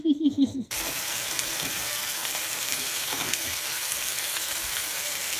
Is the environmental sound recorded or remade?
remade